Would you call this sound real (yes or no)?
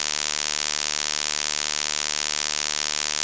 yes